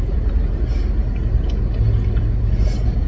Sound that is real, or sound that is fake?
real